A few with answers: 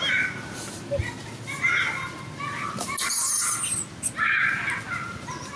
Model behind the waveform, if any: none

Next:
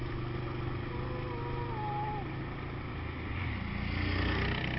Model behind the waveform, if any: none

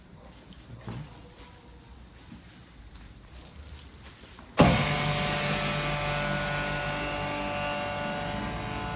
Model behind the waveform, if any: none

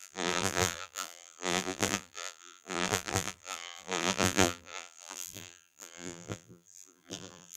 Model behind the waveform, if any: vocoder, BigVGAN v2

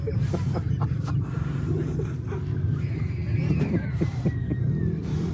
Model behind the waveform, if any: none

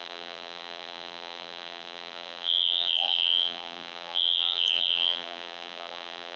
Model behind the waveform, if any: vocoder, BigVGAN v2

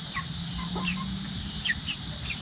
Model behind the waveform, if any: vocoder, BigVGAN v2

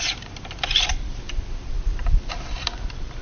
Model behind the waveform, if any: vocoder, BigVGAN v2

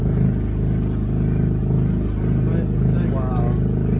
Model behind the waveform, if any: none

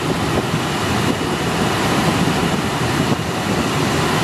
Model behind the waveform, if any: vocoder, BigVGAN v2